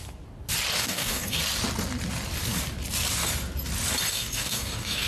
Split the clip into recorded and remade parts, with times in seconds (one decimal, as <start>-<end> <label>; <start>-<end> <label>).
0.0-0.8 recorded; 0.8-1.4 remade; 1.4-4.1 recorded; 4.1-5.1 remade